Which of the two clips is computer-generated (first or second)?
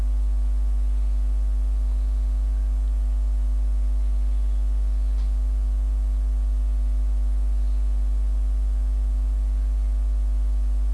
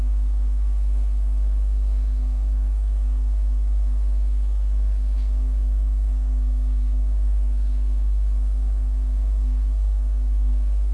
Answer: second